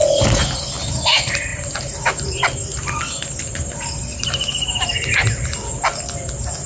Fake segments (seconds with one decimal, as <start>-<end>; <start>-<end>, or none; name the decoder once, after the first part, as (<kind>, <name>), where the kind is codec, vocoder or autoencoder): 1.5-2.4 (vocoder, BigVGAN v2); 4.1-5.5